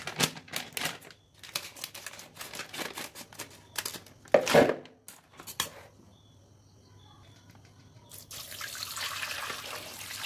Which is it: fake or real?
real